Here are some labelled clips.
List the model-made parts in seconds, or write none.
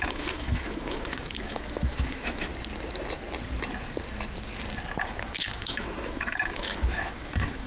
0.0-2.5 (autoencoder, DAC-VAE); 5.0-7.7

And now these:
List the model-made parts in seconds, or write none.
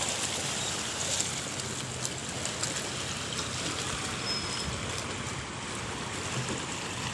none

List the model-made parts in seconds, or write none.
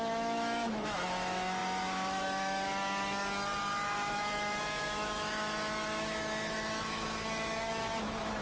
0.0-8.4 (autoencoder, DAC-VAE)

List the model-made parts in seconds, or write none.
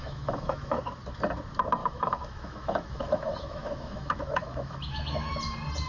0.0-0.8 (autoencoder, DAC-VAE); 1.8-5.3